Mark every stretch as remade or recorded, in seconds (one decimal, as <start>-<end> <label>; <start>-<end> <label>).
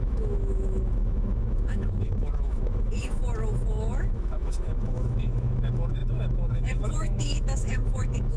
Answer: 0.0-3.2 remade; 3.2-3.7 recorded; 3.7-8.4 remade